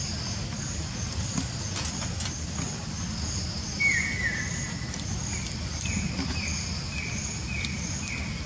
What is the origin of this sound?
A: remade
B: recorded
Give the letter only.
B